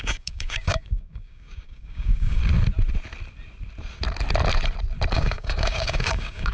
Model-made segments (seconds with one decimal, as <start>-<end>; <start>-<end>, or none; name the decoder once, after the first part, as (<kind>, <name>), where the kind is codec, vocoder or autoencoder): 0.0-2.4 (codec, DAC); 5.1-6.5